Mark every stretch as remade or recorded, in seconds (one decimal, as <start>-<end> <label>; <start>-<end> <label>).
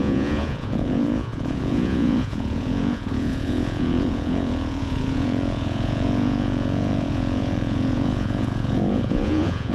0.0-9.7 remade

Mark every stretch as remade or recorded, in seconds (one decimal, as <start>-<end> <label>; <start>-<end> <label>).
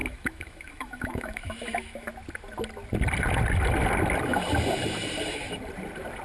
0.0-2.1 remade; 2.1-6.2 recorded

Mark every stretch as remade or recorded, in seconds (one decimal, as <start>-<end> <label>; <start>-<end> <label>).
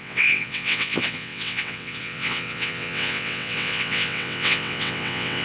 0.0-5.4 remade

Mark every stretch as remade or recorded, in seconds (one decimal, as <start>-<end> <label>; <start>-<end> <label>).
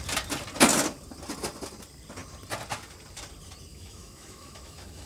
0.0-3.7 recorded; 3.7-5.1 remade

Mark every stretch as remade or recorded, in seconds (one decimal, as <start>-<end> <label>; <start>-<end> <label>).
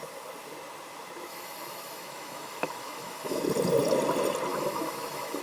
0.0-1.3 recorded; 1.3-3.4 remade; 3.4-4.5 recorded; 4.5-5.4 remade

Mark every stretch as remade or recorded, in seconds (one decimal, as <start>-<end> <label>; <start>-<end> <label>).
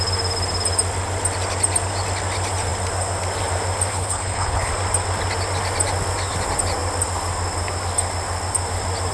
0.0-3.9 recorded; 3.9-4.7 remade; 4.7-9.1 recorded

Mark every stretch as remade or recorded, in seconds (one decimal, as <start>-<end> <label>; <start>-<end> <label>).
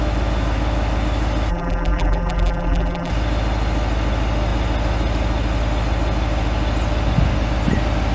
0.0-1.5 recorded; 1.5-3.1 remade; 3.1-8.1 recorded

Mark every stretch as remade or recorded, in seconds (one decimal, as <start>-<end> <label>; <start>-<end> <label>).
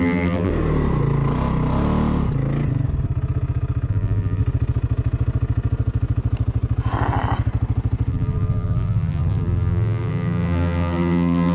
0.0-0.5 remade; 0.5-3.9 recorded; 3.9-4.4 remade; 4.4-8.1 recorded; 8.1-11.5 remade